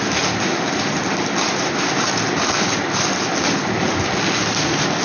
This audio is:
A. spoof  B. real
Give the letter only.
B